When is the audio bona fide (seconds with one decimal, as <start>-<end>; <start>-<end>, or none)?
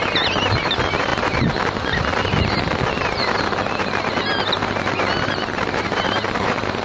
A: 1.1-5.2